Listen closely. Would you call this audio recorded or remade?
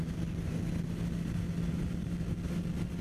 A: recorded